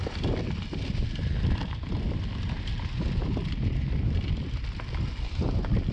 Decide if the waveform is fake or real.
real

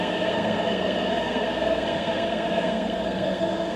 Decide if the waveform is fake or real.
fake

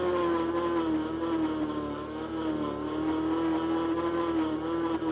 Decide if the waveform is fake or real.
real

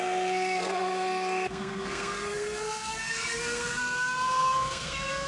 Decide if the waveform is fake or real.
fake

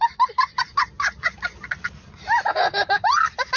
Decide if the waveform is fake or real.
real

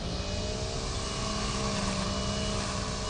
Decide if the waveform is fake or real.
real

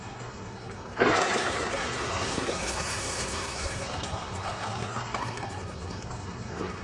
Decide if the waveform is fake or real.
fake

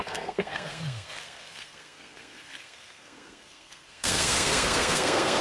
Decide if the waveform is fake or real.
fake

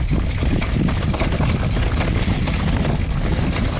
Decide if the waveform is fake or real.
real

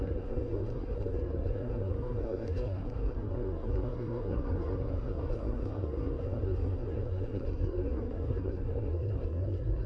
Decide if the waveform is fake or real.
fake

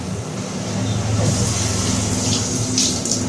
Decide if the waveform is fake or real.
real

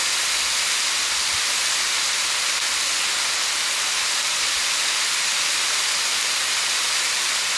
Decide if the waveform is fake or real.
real